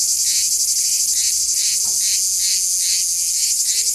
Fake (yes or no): no